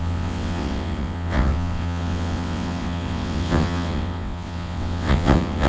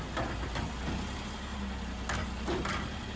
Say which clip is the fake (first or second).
first